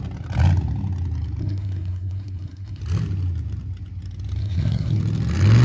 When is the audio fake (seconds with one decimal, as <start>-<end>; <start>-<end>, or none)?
1.4-2.8; 4.4-5.0

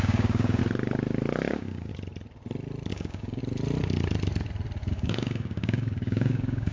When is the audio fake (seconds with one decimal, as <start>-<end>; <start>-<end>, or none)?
0.0-0.6; 1.5-1.9; 2.9-3.4; 4.9-6.7

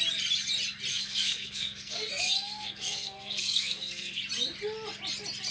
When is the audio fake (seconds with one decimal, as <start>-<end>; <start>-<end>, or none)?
0.9-4.2

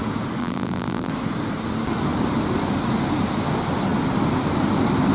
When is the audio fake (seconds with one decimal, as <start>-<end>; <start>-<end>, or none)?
0.4-1.1

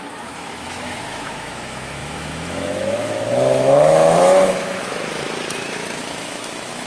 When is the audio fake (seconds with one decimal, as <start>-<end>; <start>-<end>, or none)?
0.0-6.9

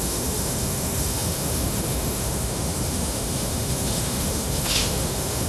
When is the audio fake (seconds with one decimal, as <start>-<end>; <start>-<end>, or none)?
0.0-5.5

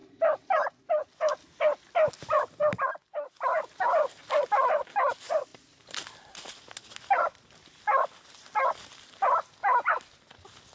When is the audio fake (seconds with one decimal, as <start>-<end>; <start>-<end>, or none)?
none